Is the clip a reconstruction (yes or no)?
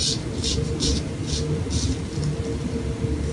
no